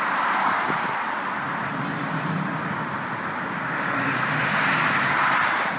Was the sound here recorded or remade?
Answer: recorded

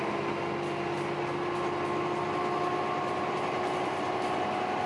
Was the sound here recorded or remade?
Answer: recorded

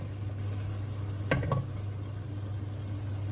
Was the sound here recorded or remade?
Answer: recorded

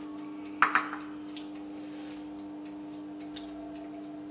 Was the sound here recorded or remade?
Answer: recorded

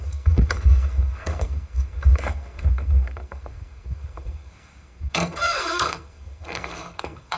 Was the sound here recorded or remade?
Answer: remade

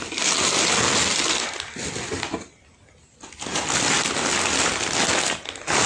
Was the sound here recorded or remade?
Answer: recorded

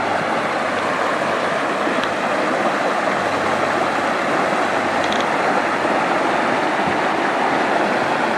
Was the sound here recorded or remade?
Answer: recorded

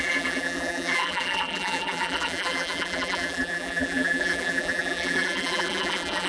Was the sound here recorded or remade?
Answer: remade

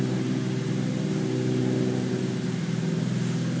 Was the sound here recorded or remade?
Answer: recorded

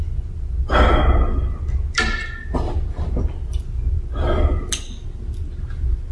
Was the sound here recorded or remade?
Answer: recorded